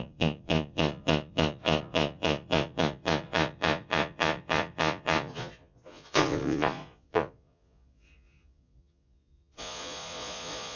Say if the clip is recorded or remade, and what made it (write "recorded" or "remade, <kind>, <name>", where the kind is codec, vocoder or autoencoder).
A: remade, vocoder, Vocos